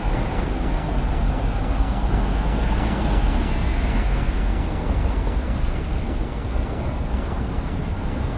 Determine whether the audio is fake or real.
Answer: fake